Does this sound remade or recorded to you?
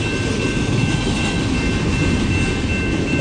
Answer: recorded